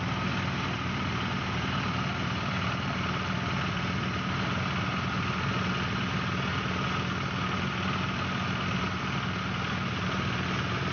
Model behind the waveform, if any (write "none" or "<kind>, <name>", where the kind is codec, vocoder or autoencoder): none